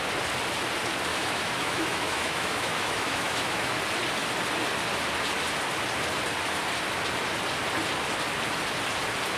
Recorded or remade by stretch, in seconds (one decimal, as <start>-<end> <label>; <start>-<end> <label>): 0.0-1.1 recorded; 1.1-3.8 remade; 3.8-9.4 recorded